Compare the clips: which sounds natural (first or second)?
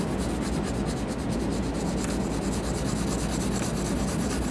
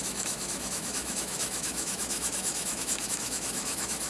first